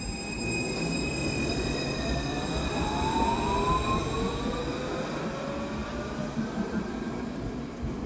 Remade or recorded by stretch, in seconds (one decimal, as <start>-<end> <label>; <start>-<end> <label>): 0.0-1.1 recorded; 1.1-2.7 remade; 2.7-5.8 recorded; 5.8-7.1 remade; 7.1-8.1 recorded